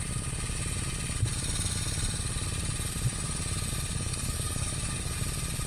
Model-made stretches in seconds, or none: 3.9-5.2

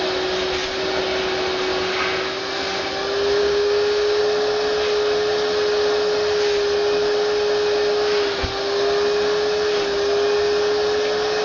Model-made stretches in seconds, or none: 3.4-4.2

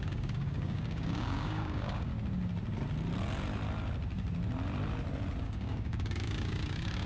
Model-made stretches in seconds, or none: 0.0-2.1; 5.4-7.1

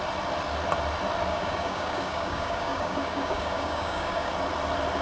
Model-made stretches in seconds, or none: 1.3-4.3

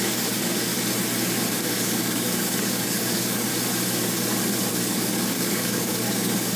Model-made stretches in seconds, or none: 0.0-0.7; 1.5-3.5; 4.7-6.6

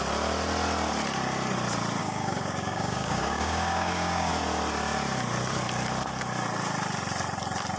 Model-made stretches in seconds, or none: 2.0-4.3